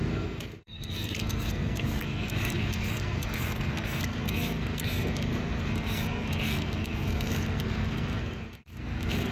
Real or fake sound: fake